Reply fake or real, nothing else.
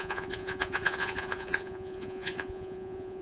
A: fake